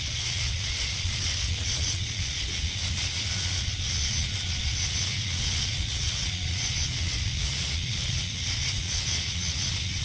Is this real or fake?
fake